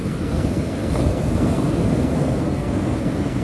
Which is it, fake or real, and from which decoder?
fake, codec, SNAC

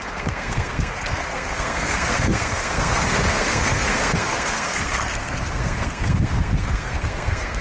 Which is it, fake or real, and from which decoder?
fake, codec, SNAC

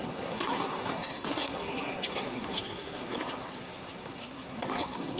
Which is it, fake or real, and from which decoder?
fake, codec, SNAC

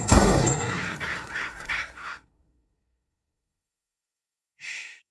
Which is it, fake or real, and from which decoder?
fake, codec, SNAC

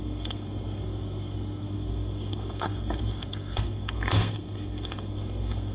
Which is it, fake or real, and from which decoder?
fake, codec, SNAC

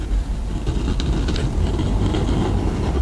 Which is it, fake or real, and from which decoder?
real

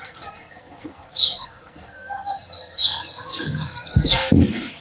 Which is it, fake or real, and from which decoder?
fake, codec, SNAC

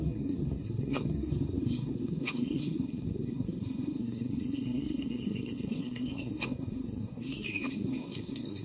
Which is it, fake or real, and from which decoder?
fake, codec, SNAC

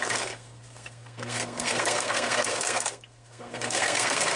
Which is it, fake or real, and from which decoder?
fake, codec, SNAC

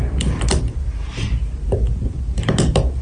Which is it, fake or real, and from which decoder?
real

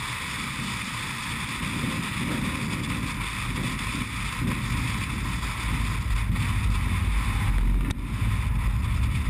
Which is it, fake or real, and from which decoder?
real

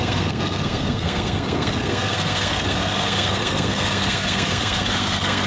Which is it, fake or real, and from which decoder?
fake, codec, SNAC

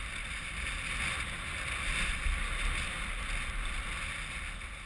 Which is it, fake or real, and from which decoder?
real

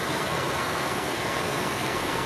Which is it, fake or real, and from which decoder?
fake, codec, SNAC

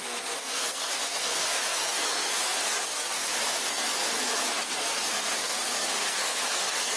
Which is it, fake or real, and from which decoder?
fake, codec, SNAC